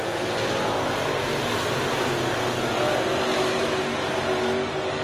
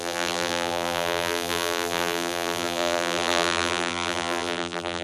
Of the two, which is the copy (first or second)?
second